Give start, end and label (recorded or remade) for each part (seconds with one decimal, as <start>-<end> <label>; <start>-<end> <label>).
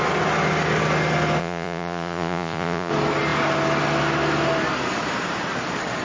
0.0-1.4 recorded; 1.4-2.9 remade; 2.9-6.0 recorded